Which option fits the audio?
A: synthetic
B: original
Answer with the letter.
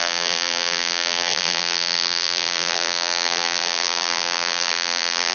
A